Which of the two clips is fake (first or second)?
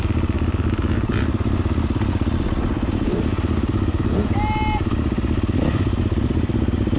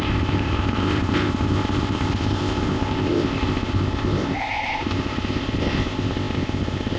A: second